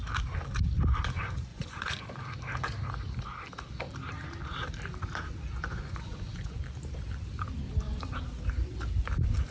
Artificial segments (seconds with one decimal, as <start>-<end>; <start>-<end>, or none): 1.5-2.0; 5.7-6.6